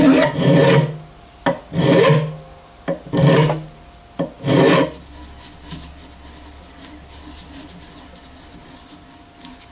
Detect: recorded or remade recorded